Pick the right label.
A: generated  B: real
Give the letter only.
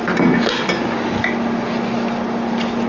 B